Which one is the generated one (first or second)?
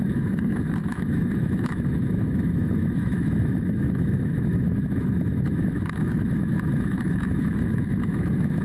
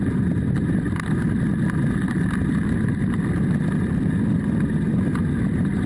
first